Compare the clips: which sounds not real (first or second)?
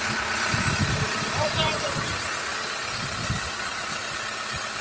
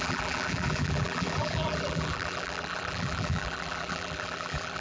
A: second